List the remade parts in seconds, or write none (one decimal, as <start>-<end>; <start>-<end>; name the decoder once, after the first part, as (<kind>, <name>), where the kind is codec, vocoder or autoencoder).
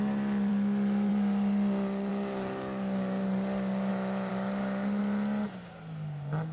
2.1-3.9 (codec, DAC); 4.3-5.0